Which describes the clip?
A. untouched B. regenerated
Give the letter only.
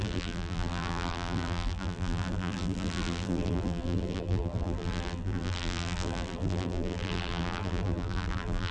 B